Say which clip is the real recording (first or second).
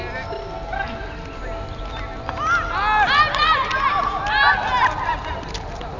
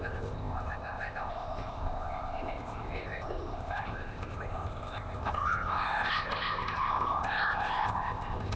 first